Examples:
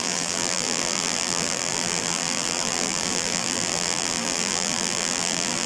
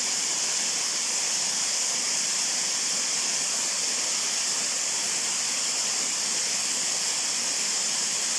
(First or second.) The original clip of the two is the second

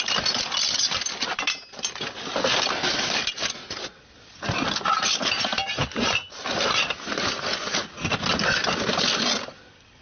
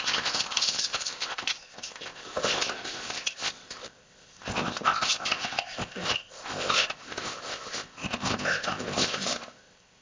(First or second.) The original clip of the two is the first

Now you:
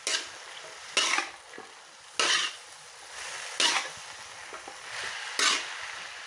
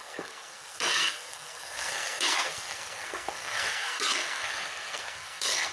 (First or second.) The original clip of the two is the first